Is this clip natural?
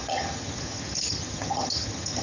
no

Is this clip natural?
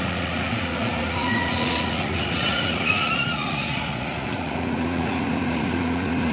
no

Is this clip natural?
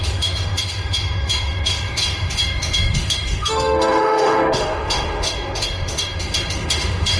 no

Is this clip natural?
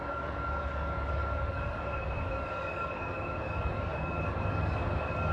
no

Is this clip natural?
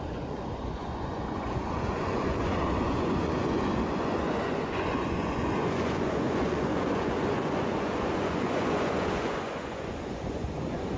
no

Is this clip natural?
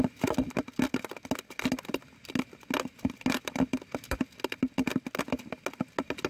yes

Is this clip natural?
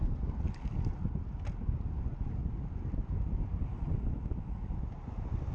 yes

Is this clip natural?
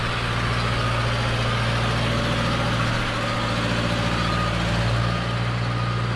yes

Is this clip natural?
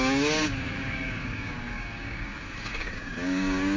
no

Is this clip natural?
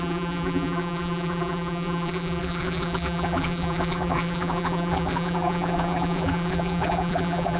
no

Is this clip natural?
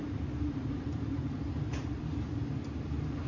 no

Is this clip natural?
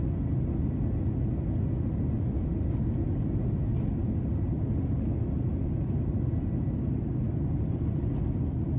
yes